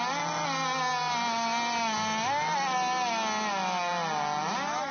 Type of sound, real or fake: real